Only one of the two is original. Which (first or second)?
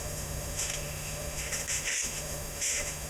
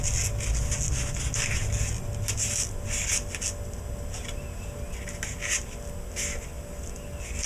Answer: second